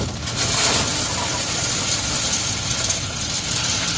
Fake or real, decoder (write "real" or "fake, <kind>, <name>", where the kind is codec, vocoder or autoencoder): real